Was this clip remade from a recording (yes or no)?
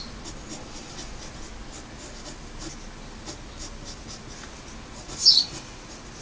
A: no